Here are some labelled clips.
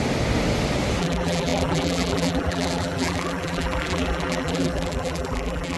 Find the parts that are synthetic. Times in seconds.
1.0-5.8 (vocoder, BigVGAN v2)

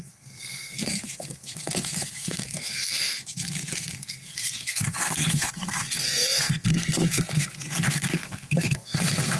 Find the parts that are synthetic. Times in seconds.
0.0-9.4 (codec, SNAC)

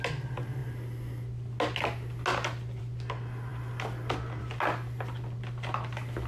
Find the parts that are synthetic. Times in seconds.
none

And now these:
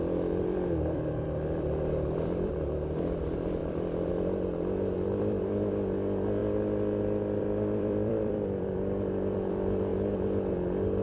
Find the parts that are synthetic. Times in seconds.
0.0-6.4 (vocoder, BigVGAN v2); 7.4-9.9; 10.5-11.0

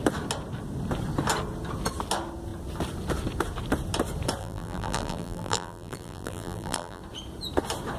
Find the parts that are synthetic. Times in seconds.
4.4-7.0 (vocoder, BigVGAN v2)

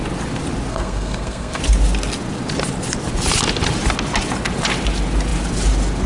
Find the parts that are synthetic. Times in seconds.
0.7-1.6 (codec, SNAC)